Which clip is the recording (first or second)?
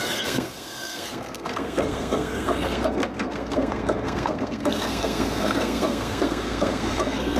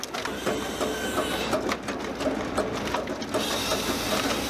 second